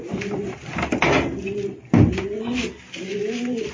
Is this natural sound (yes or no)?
yes